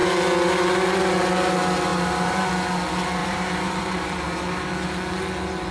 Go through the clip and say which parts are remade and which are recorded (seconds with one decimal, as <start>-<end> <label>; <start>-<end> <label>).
0.0-1.9 recorded; 1.9-2.5 remade; 2.5-3.2 recorded; 3.2-4.7 remade; 4.7-5.7 recorded